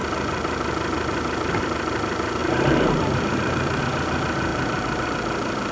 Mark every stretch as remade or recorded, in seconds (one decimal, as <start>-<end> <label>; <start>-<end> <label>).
0.0-2.4 recorded; 2.4-3.8 remade; 3.8-4.5 recorded; 4.5-5.1 remade; 5.1-5.7 recorded